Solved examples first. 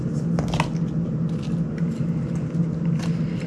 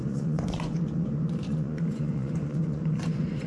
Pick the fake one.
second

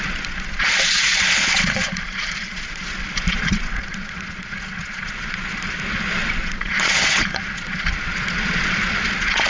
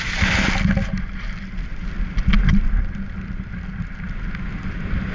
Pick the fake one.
first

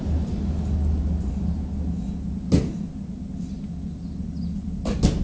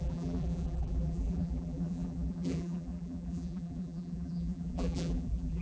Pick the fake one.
second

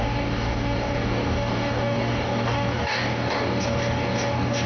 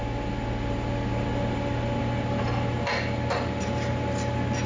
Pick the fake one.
first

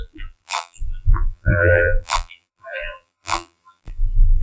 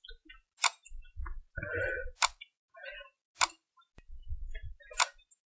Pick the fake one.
first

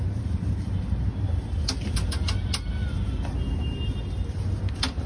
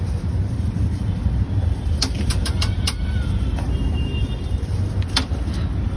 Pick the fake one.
second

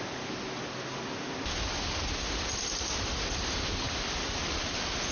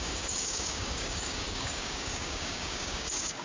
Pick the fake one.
second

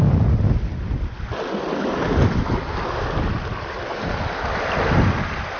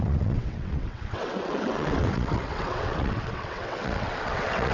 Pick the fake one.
second